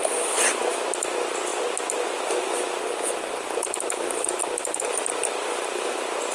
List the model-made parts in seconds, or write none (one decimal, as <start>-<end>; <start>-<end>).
none